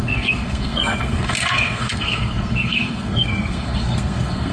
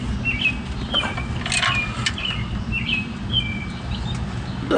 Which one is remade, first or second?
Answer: first